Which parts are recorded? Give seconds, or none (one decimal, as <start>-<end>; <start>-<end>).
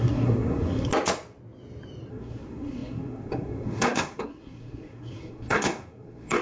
0.9-2.1